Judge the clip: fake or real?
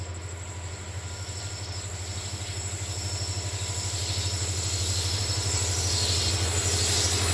real